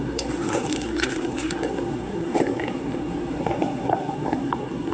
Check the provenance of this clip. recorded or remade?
remade